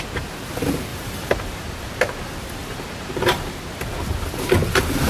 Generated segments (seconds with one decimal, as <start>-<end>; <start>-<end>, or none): 0.9-1.9; 2.6-3.6